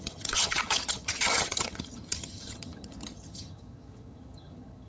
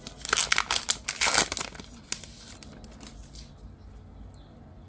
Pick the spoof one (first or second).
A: first